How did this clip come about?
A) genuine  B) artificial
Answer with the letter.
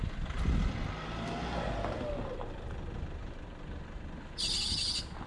A